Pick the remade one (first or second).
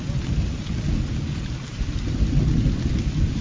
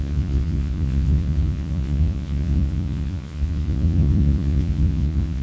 second